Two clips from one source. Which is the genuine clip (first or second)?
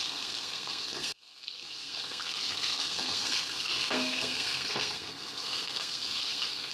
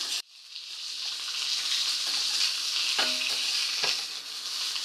second